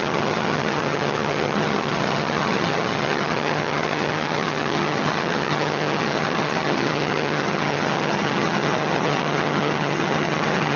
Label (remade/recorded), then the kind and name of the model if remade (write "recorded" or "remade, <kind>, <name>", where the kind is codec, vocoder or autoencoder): remade, vocoder, HiFi-GAN